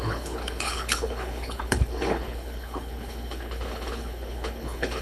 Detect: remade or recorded remade